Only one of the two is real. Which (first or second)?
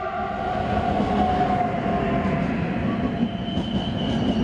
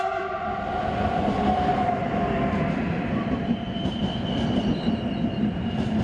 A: first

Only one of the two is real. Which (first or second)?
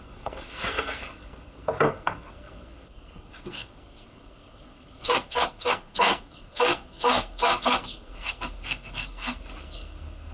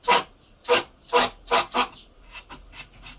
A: second